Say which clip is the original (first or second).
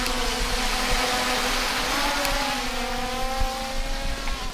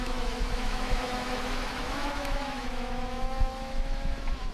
first